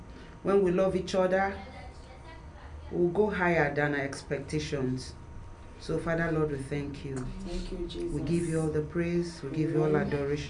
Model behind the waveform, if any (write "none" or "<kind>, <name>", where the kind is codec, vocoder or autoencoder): none